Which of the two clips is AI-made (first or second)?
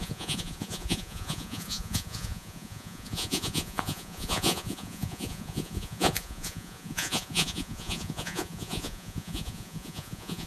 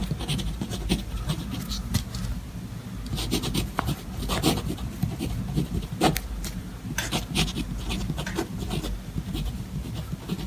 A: first